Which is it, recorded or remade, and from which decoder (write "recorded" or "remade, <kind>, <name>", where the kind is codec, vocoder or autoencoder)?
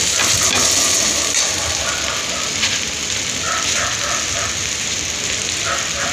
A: recorded